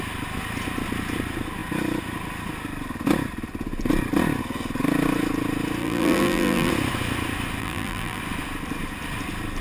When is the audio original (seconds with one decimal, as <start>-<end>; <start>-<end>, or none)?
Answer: 0.0-5.8; 6.7-7.6; 8.2-9.6

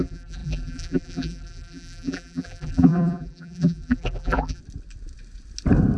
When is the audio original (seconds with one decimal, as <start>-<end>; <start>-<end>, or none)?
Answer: 4.6-6.0

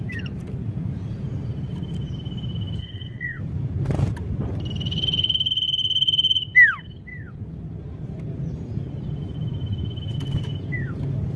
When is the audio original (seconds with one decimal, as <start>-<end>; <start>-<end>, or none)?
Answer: 0.0-2.8; 3.4-11.4

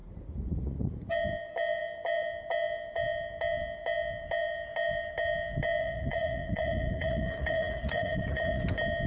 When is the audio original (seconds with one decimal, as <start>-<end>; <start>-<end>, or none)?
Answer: 1.1-5.8; 8.6-9.1

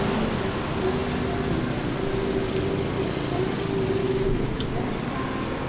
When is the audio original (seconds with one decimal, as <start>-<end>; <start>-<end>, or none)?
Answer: 0.0-4.0; 4.6-5.7

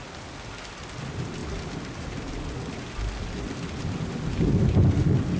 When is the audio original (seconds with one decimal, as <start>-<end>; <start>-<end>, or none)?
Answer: 0.0-5.4

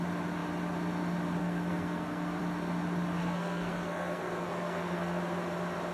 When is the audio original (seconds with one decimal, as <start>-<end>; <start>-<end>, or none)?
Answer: 0.0-1.4; 2.4-3.2; 5.2-5.9

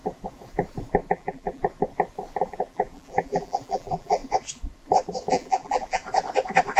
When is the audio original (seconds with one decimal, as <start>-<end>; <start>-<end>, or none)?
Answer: 0.0-1.1; 1.6-2.4; 4.2-5.3; 6.0-6.8